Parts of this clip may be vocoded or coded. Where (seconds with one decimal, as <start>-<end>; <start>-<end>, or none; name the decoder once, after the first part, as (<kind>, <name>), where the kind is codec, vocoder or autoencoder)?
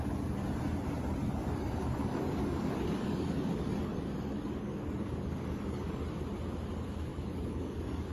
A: 1.4-6.0 (codec, DAC); 7.1-8.1